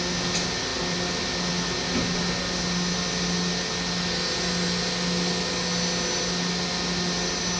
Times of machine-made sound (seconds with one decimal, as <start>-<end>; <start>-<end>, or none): none